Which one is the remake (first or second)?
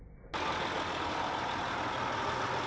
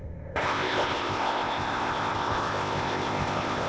second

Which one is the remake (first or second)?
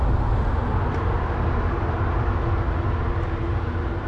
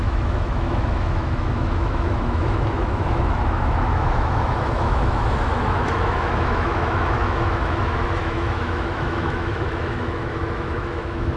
second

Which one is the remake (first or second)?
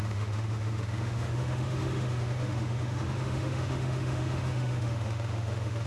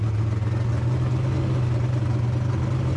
first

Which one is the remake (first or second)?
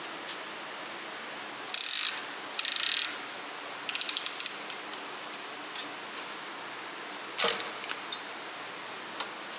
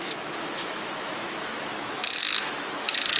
second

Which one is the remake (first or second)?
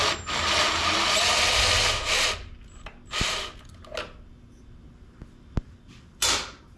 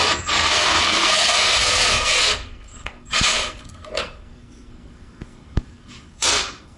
second